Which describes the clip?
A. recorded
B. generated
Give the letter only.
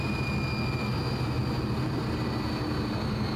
A